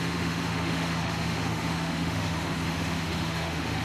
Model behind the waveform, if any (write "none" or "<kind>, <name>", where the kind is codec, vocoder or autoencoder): autoencoder, DAC-VAE